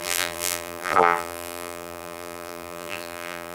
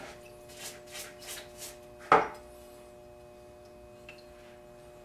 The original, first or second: second